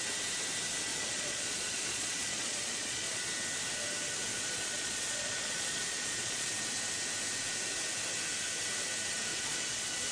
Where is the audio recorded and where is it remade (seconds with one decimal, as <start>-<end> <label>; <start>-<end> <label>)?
0.0-0.9 recorded; 0.9-3.3 remade; 3.3-4.3 recorded; 4.3-6.5 remade; 6.5-9.3 recorded; 9.3-10.1 remade